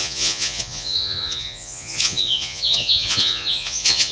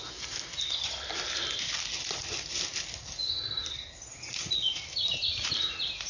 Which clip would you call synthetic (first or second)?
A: first